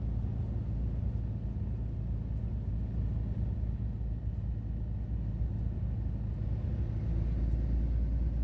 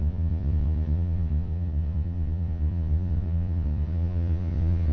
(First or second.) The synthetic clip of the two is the second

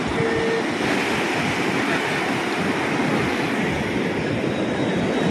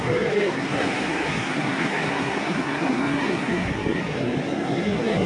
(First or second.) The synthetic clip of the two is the second